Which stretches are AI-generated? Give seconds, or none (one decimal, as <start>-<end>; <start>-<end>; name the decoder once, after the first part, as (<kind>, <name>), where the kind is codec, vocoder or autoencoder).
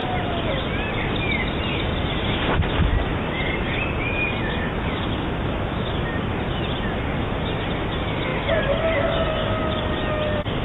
3.1-3.8 (vocoder, BigVGAN v2)